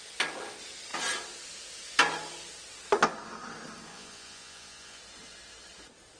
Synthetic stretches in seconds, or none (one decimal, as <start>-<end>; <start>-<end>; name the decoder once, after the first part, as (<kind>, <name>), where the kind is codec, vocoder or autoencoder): 3.9-5.0 (vocoder, Vocos)